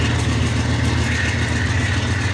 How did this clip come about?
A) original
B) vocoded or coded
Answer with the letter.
A